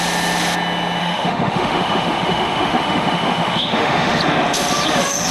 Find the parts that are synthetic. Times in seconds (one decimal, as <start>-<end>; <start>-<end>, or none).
1.0-4.2